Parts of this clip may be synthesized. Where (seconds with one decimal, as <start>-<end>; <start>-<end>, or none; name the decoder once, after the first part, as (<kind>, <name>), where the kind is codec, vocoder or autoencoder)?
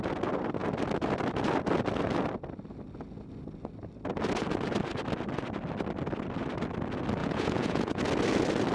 7.2-8.0 (vocoder, Vocos)